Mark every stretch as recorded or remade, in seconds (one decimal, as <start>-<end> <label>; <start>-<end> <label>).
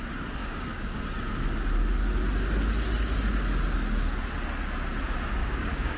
0.0-0.4 recorded; 0.4-1.0 remade; 1.0-5.4 recorded; 5.4-6.0 remade